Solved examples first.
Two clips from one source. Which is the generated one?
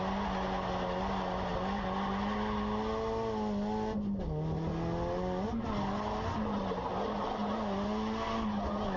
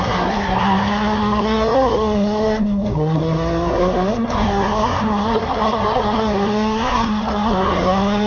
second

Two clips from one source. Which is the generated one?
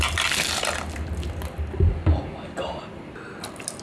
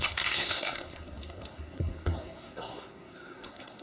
second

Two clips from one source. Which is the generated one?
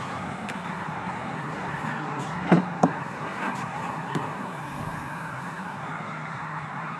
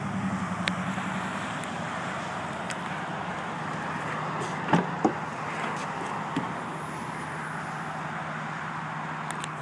first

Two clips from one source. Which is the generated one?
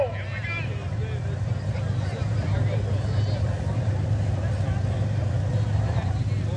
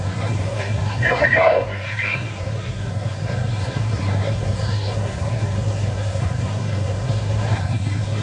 second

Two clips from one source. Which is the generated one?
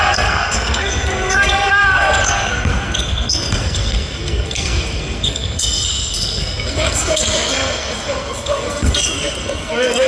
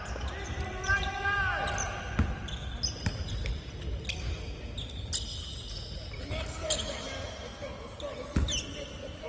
first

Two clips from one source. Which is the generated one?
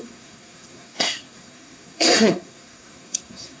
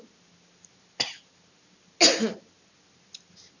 first